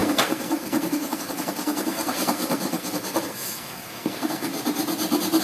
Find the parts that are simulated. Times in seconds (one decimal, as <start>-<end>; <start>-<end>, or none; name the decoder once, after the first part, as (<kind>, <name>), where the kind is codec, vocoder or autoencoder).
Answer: 0.0-4.5 (codec, SNAC)